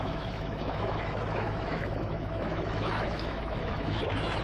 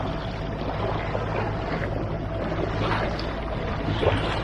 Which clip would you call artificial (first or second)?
first